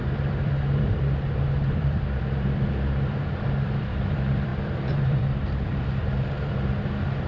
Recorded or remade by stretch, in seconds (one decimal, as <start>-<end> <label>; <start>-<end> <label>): 0.0-7.3 remade